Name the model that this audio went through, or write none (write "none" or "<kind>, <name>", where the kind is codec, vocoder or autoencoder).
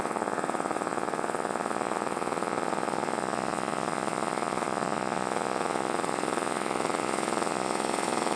vocoder, Vocos